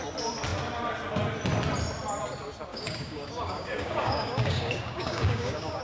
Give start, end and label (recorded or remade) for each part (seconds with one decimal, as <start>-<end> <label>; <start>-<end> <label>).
0.0-2.7 recorded; 2.7-5.8 remade

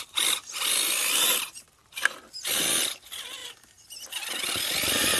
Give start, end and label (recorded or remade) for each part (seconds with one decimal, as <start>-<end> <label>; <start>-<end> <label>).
0.0-5.2 recorded

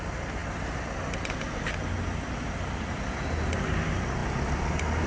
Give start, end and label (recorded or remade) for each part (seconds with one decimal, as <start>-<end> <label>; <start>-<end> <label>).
0.0-5.1 recorded

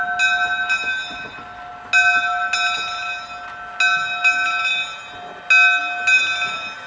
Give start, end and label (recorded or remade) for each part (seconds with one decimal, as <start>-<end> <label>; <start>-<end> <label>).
0.0-6.9 recorded

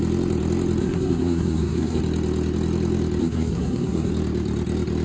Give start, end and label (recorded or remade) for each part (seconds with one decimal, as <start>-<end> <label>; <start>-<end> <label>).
0.0-0.8 recorded; 0.8-2.0 remade; 2.0-3.2 recorded; 3.2-4.1 remade; 4.1-5.0 recorded

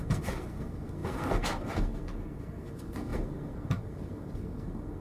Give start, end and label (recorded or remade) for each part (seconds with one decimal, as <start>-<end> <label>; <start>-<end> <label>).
0.0-5.0 remade

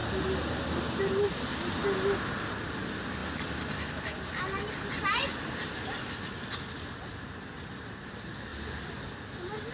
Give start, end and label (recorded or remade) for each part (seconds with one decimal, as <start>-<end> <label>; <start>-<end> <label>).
0.0-1.7 remade; 1.7-3.2 recorded; 3.2-8.1 remade; 8.1-8.5 recorded; 8.5-9.0 remade; 9.0-9.7 recorded